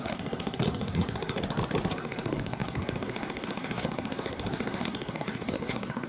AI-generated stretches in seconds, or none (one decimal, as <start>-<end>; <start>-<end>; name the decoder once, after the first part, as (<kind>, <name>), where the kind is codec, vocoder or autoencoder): 0.0-1.4 (codec, SNAC); 1.9-6.1